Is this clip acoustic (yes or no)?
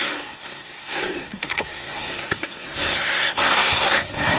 no